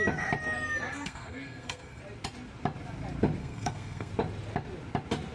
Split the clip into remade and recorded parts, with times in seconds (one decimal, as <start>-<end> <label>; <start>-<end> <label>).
0.0-0.9 recorded; 0.9-2.0 remade; 2.0-3.4 recorded; 3.4-4.1 remade; 4.1-5.3 recorded